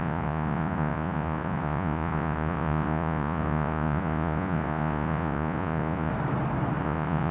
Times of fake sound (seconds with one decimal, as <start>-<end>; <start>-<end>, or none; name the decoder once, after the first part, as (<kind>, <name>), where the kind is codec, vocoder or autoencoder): 0.0-6.1 (vocoder, Vocos); 6.8-7.3